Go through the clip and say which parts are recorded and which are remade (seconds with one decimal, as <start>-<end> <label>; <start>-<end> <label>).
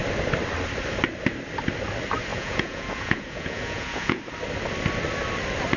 0.0-2.3 recorded; 2.3-4.2 remade; 4.2-5.8 recorded